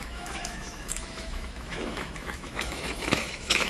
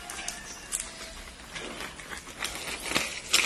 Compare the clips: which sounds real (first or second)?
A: second